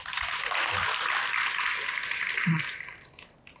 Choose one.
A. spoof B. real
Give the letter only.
B